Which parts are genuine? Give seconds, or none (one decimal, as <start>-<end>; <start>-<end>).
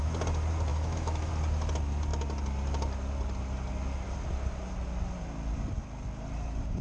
0.0-0.7; 1.3-6.8